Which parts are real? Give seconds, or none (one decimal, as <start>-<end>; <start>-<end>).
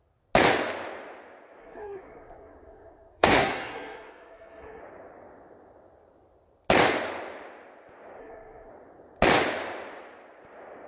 0.0-1.6; 4.8-8.2; 8.7-10.9